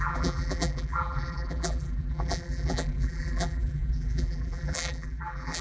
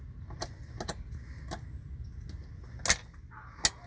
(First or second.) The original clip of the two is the second